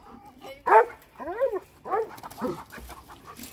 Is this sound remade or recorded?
recorded